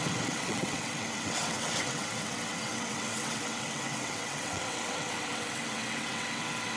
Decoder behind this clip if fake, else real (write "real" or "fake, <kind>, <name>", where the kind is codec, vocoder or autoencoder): fake, vocoder, WaveNeXt